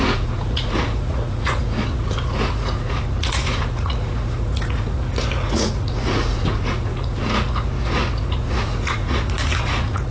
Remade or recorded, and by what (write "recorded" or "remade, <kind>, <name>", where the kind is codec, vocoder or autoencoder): remade, vocoder, Vocos